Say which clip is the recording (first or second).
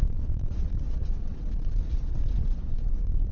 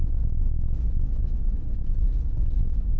second